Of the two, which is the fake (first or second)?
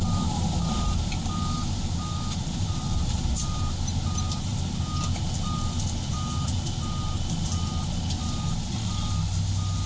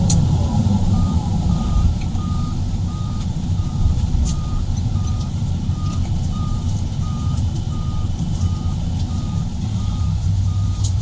second